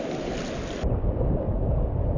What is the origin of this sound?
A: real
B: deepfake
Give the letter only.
A